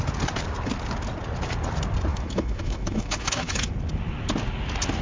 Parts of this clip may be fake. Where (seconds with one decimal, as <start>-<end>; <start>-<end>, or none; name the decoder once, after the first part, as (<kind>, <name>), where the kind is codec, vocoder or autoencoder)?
2.1-3.7 (autoencoder, DAC-VAE)